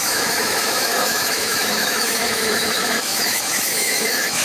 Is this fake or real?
fake